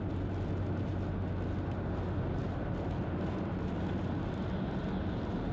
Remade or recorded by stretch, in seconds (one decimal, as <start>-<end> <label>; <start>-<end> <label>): 0.0-5.5 recorded

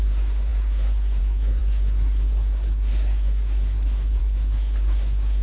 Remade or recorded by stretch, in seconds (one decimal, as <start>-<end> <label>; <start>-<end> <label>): 0.0-5.4 remade

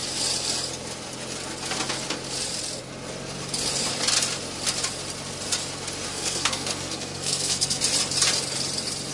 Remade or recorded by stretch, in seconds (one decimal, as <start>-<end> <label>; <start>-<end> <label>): 0.0-6.1 recorded; 6.1-7.8 remade; 7.8-9.1 recorded

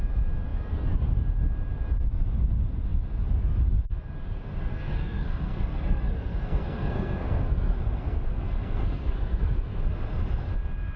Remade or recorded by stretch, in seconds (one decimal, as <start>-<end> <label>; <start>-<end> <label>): 0.0-4.7 recorded; 4.7-9.8 remade; 9.8-11.0 recorded